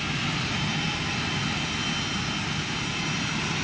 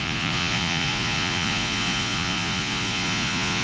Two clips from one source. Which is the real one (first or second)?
first